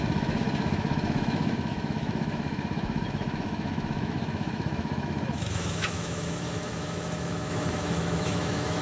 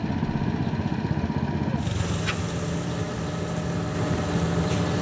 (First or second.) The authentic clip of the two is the second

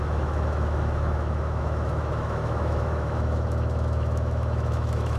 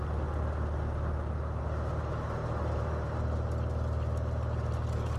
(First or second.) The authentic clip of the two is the second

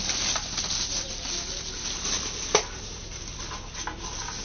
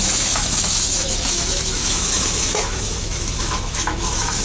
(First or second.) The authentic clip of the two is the first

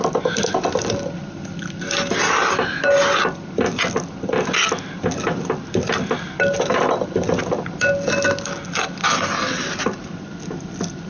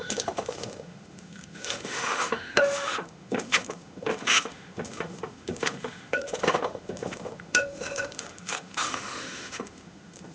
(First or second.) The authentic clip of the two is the first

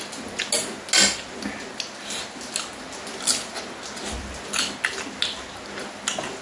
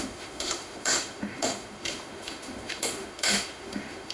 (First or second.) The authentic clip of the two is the first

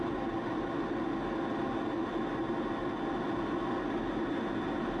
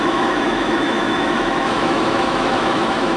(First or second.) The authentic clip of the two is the first